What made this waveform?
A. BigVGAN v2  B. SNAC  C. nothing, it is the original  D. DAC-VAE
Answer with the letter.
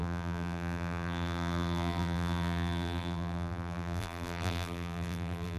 A